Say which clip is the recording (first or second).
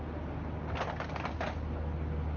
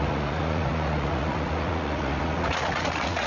first